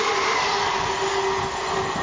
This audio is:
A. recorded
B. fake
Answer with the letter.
A